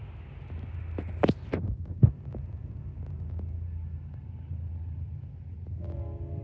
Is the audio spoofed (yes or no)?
no